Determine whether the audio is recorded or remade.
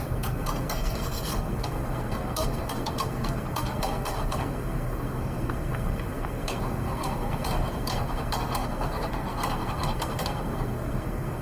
remade